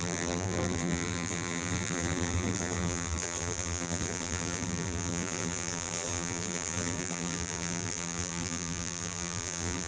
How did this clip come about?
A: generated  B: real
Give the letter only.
A